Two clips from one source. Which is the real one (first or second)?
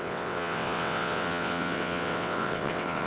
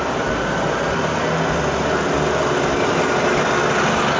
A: second